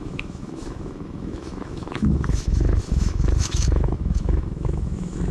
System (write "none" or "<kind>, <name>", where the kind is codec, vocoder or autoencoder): autoencoder, DAC-VAE